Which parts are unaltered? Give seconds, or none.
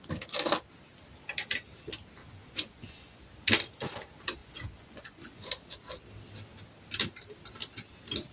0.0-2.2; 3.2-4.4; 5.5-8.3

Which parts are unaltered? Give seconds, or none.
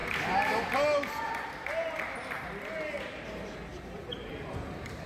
0.0-3.7; 4.3-5.1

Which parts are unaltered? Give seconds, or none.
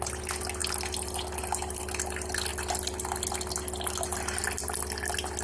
0.0-4.1; 4.6-5.4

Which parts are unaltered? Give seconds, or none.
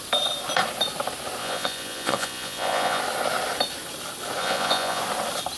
0.0-1.4; 3.0-4.4; 5.0-5.6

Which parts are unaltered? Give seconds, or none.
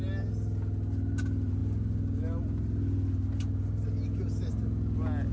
0.0-5.3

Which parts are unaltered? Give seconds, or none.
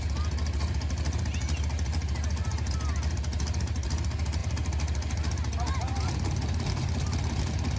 0.0-7.8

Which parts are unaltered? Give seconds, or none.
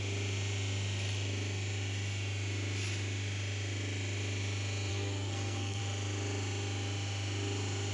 0.0-4.9; 5.8-7.9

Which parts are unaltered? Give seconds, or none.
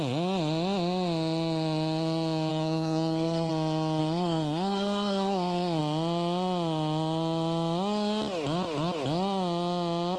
0.0-2.5; 3.5-4.0; 5.8-10.2